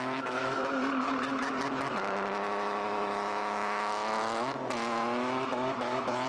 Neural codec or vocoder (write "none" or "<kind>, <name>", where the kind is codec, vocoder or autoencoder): autoencoder, DAC-VAE